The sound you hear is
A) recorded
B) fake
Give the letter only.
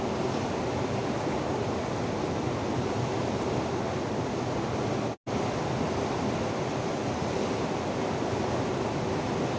A